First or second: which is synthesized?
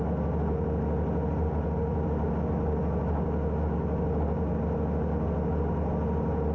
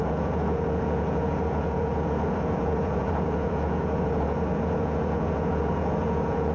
second